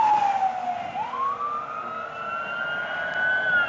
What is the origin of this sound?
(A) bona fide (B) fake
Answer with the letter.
A